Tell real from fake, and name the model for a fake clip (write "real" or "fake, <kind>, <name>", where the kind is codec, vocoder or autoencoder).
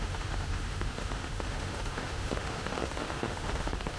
fake, autoencoder, DAC-VAE